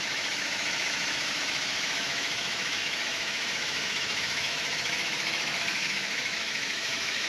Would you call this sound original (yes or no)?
no